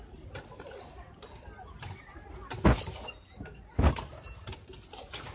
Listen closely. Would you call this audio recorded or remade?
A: recorded